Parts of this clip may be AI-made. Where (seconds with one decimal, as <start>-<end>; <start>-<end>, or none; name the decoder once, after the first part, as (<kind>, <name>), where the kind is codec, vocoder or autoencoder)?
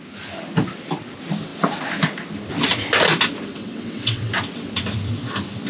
3.5-4.3 (vocoder, WaveNeXt)